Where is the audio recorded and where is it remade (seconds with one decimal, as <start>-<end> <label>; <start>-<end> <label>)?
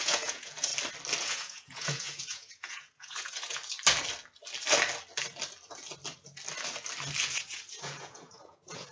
0.0-0.7 remade; 0.7-1.2 recorded; 1.2-3.6 remade; 3.6-7.2 recorded; 7.2-8.9 remade